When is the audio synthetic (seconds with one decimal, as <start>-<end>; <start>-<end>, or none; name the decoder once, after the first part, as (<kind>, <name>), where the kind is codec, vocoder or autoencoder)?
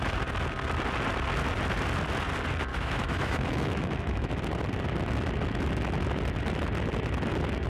2.7-4.4 (autoencoder, DAC-VAE)